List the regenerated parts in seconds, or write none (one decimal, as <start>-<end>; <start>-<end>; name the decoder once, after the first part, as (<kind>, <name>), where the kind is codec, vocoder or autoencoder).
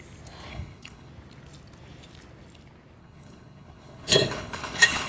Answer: 0.5-1.1 (codec, HILCodec); 3.0-5.1